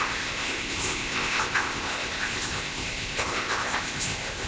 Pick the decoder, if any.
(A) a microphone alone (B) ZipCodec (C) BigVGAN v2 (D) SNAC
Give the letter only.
B